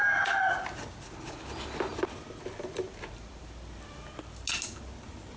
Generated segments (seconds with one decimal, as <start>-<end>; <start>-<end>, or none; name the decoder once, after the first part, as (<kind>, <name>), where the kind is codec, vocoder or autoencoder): none